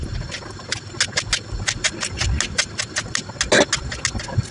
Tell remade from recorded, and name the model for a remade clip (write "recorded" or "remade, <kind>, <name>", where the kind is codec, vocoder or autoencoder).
recorded